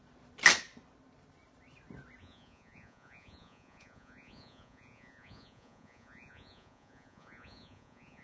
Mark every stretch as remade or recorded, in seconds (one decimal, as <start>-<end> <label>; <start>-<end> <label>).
0.0-2.2 recorded; 2.2-8.2 remade